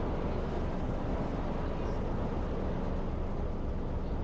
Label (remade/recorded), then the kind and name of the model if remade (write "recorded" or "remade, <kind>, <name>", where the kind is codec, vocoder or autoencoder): recorded